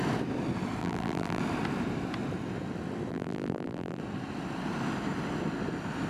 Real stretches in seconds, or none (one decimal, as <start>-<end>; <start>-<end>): 0.0-0.8; 1.4-3.1; 4.0-6.1